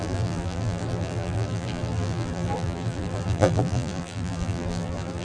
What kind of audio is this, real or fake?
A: fake